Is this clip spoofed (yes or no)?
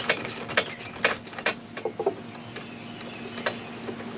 no